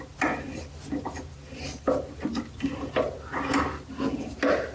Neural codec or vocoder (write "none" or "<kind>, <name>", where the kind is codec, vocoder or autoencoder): none